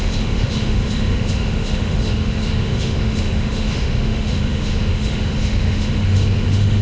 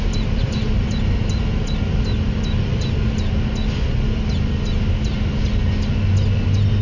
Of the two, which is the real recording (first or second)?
second